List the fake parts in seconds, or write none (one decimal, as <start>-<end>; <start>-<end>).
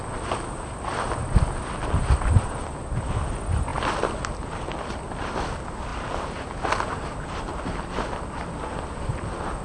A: 3.7-5.4